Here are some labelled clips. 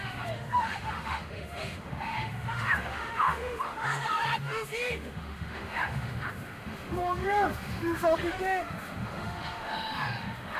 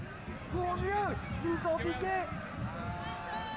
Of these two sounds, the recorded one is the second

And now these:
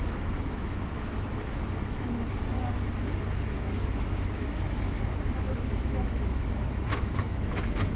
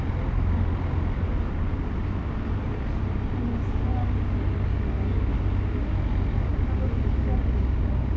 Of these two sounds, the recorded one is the second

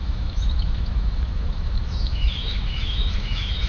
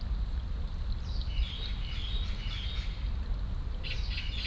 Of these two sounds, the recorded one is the second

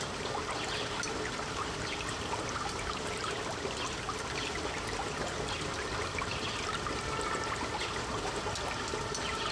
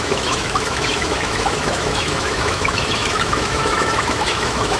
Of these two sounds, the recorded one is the first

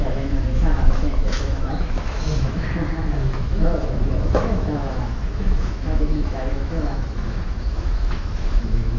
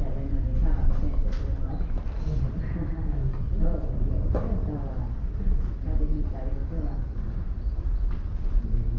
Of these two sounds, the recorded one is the second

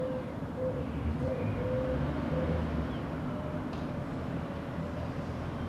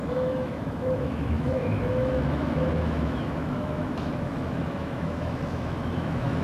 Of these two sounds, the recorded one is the first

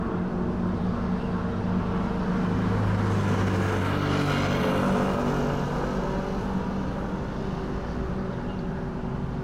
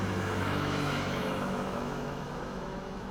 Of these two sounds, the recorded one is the first